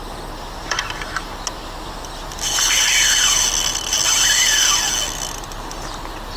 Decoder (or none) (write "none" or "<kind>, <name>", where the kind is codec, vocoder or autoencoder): none